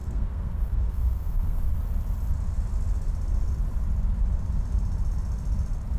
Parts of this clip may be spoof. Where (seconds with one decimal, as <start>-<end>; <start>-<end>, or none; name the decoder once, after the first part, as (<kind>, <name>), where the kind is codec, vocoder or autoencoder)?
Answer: 0.0-1.6 (codec, SNAC)